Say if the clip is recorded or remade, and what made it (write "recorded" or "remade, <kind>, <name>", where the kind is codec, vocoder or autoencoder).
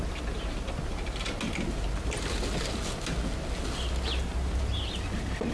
recorded